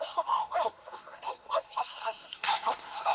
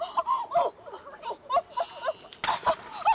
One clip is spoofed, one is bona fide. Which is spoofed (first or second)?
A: first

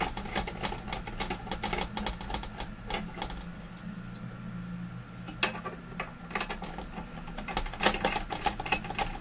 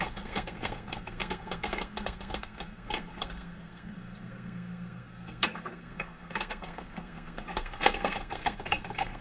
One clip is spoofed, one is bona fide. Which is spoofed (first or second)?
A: second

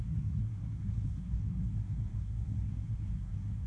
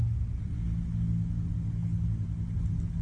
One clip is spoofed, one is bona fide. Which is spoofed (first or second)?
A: first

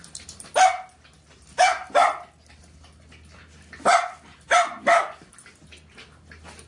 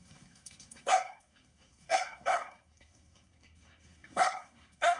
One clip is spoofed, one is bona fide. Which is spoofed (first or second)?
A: second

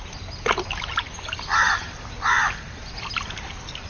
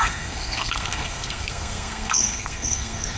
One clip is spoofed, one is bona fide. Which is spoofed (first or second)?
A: second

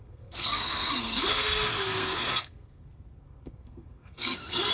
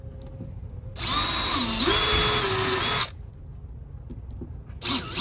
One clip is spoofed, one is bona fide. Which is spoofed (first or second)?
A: first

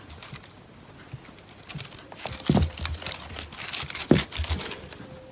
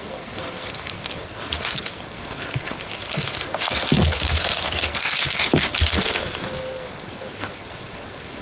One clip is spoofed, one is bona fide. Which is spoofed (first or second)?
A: second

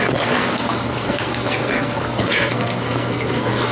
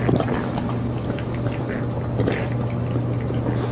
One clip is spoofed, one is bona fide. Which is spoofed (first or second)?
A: first